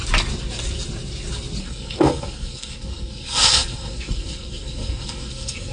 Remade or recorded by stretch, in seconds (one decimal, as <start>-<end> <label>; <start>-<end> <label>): 0.0-1.6 recorded; 1.6-5.7 remade